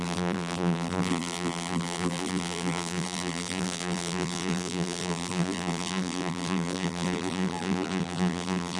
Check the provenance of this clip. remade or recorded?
remade